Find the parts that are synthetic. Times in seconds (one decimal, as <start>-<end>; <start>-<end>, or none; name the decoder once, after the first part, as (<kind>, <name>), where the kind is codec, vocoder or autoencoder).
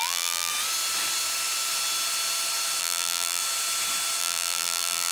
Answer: 0.0-0.5 (vocoder, BigVGAN v2); 2.8-3.4; 4.2-5.1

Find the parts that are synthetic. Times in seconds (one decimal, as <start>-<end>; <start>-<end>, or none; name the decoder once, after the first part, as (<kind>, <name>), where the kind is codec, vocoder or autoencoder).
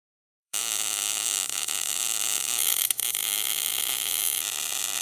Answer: 0.0-4.2 (autoencoder, DAC-VAE)